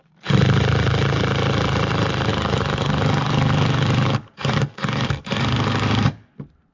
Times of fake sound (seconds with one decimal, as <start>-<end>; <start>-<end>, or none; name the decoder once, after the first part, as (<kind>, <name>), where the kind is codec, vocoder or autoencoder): 2.3-6.3 (codec, DAC)